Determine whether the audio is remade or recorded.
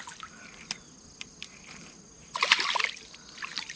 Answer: recorded